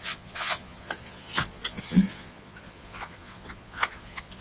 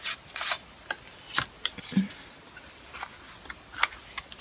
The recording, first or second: second